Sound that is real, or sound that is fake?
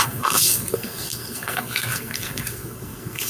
fake